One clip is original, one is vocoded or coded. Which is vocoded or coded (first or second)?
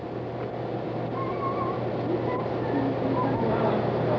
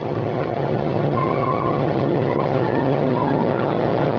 second